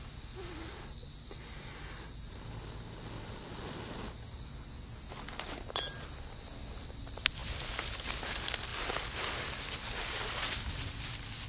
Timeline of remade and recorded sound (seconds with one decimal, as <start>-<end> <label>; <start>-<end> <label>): 0.0-11.5 recorded

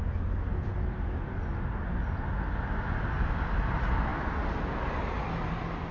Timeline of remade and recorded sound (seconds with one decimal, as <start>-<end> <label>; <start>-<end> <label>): 0.0-5.9 recorded

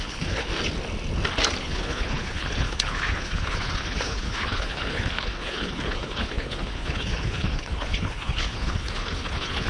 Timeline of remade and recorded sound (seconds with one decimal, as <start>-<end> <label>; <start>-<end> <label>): 0.0-0.5 remade; 0.5-1.6 recorded; 1.6-9.7 remade

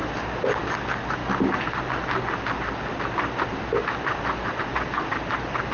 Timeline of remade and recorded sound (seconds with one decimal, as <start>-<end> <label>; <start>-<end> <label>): 0.0-5.7 recorded